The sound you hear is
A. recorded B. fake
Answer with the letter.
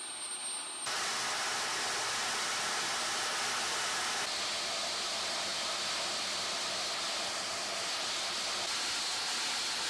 A